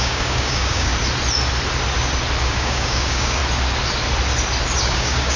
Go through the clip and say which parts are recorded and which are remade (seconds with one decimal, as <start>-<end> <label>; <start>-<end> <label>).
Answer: 0.0-0.9 remade; 0.9-2.4 recorded; 2.4-3.4 remade; 3.4-4.8 recorded; 4.8-5.4 remade